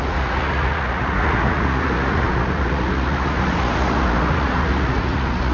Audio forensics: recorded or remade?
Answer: remade